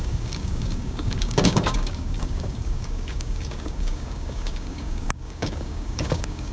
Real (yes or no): no